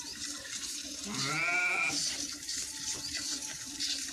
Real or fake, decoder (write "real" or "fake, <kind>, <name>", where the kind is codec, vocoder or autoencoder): fake, vocoder, BigVGAN v2